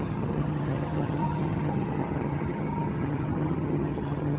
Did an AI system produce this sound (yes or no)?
yes